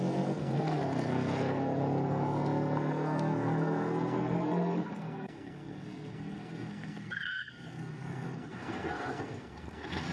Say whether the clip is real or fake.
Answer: fake